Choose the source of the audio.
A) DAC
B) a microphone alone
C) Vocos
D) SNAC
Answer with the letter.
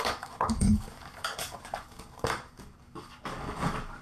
A